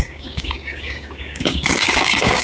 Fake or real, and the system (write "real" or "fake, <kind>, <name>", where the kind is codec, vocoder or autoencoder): fake, codec, DAC